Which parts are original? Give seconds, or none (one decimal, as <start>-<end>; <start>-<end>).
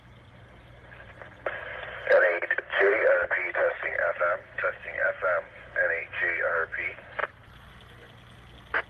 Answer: 0.0-1.7; 4.2-7.2; 7.7-8.9